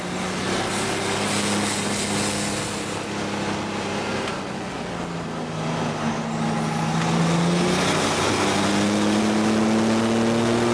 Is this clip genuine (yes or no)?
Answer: yes